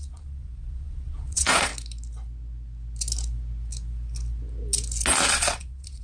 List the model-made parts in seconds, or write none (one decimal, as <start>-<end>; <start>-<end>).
0.0-1.7; 5.3-6.0